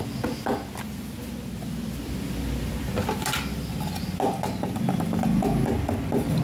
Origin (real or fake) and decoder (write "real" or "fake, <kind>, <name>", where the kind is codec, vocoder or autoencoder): real